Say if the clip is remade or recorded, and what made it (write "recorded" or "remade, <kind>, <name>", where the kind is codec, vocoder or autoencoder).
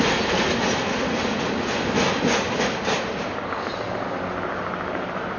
recorded